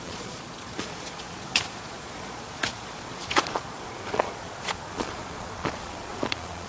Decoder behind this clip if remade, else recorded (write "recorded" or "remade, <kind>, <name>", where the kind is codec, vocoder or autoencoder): remade, vocoder, Vocos